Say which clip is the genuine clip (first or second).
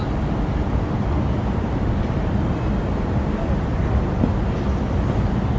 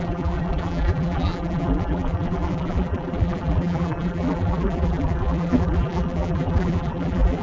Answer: first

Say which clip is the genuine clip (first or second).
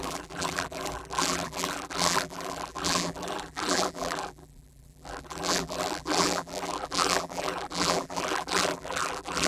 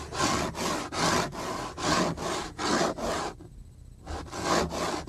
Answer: second